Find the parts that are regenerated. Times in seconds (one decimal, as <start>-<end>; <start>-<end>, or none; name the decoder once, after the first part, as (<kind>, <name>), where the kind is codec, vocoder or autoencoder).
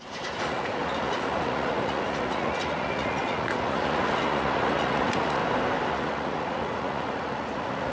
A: 0.0-5.4 (vocoder, Vocos); 5.9-7.9